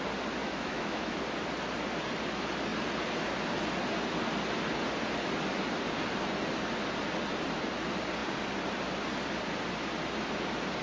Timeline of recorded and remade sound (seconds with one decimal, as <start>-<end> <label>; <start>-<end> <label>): 0.0-0.4 recorded; 0.4-1.2 remade; 1.2-10.8 recorded